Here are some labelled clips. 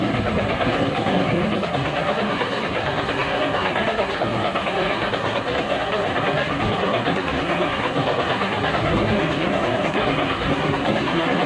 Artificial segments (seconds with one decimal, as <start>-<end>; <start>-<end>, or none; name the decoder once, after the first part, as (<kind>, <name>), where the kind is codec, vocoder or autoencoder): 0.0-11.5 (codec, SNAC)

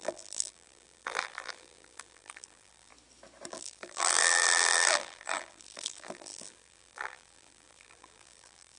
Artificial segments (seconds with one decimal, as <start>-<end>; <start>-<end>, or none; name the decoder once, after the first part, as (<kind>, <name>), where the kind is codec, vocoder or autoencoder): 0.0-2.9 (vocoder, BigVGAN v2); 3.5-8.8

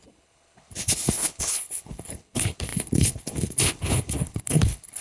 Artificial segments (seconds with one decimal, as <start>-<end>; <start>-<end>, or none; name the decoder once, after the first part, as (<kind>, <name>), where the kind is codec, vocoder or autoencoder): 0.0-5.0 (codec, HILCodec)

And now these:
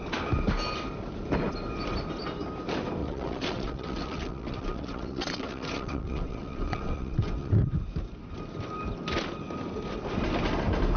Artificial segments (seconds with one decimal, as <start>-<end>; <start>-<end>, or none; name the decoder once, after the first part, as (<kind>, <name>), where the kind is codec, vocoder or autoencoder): 3.0-7.7 (vocoder, WaveNeXt)